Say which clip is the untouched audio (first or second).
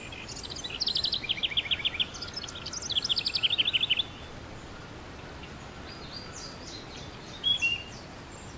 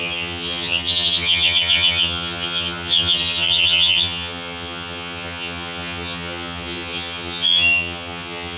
first